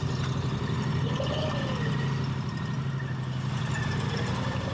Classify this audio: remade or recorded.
recorded